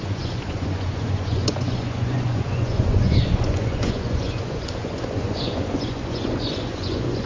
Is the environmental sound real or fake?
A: fake